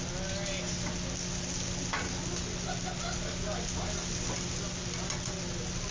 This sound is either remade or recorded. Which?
recorded